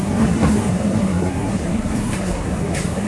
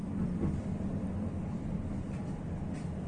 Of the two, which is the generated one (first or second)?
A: first